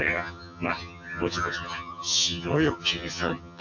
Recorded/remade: remade